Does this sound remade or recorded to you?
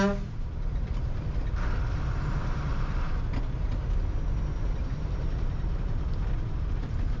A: recorded